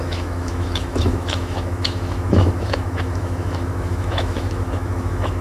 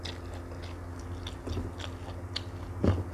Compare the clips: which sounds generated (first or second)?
first